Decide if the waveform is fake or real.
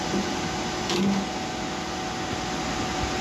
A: real